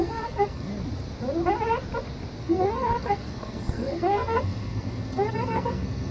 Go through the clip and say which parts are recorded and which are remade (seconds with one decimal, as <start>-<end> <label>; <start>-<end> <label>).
0.0-0.7 remade; 0.7-2.4 recorded; 2.4-6.1 remade